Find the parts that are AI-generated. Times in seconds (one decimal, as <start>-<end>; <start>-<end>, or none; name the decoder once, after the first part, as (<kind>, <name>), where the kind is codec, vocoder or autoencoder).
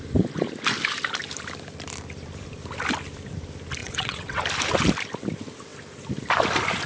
3.8-4.4 (vocoder, WaveNeXt)